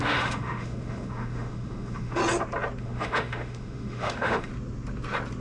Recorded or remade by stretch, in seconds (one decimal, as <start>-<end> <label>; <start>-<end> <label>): 0.0-2.2 remade; 2.2-2.8 recorded; 2.8-4.5 remade; 4.5-5.4 recorded